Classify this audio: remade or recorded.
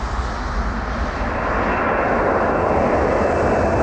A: recorded